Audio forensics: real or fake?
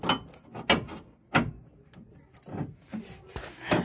real